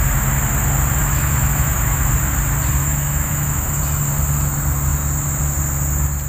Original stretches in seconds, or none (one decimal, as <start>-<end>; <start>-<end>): 0.0-1.0; 2.0-2.8; 3.8-6.3